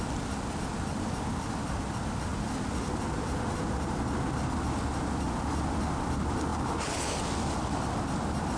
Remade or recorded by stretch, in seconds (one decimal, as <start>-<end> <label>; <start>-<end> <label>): 0.0-8.6 recorded

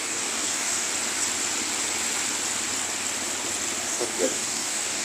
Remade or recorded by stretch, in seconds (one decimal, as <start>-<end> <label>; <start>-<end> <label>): 0.0-0.9 remade; 0.9-3.9 recorded; 3.9-5.0 remade

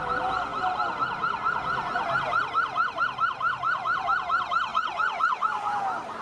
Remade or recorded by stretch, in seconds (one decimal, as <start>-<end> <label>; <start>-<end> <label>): 0.0-4.7 recorded; 4.7-5.8 remade; 5.8-6.2 recorded

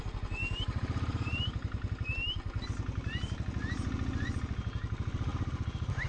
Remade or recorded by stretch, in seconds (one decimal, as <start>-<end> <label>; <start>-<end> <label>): 0.0-0.4 recorded; 0.4-1.9 remade; 1.9-5.3 recorded; 5.3-6.1 remade

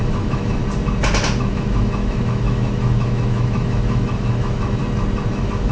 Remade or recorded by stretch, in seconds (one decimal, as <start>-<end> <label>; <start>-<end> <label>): 0.0-0.6 remade; 0.6-1.4 recorded; 1.4-4.8 remade; 4.8-5.3 recorded; 5.3-5.7 remade

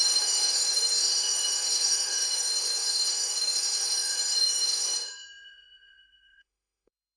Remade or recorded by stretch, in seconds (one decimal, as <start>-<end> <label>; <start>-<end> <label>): 0.0-7.2 remade

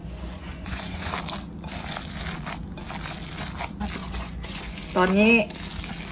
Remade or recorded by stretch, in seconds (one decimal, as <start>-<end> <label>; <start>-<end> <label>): 0.0-1.1 remade; 1.1-4.0 recorded; 4.0-4.8 remade; 4.8-6.1 recorded